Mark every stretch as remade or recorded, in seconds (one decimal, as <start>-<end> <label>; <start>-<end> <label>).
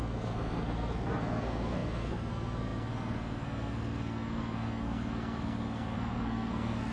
0.0-6.9 remade